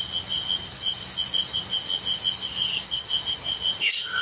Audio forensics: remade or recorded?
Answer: recorded